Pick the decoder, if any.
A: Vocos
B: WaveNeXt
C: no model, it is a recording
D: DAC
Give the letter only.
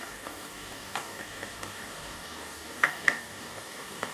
D